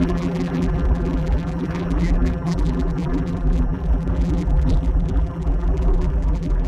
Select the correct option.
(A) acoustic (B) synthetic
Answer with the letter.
B